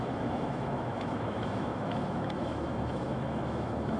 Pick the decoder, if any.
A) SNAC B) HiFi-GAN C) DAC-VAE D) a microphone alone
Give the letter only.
C